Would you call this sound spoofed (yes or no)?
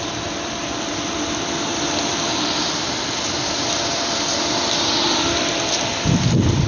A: yes